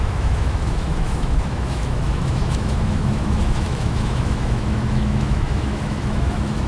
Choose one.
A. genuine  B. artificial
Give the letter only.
B